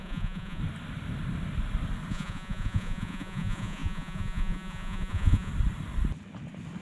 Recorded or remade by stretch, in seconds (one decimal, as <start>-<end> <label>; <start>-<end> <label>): 0.0-0.6 remade; 0.6-2.1 recorded; 2.1-5.5 remade; 5.5-6.8 recorded